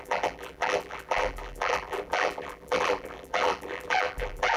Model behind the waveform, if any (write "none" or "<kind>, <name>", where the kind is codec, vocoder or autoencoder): vocoder, BigVGAN v2